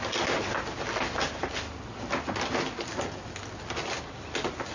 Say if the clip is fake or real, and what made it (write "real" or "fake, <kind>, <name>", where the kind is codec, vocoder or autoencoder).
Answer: real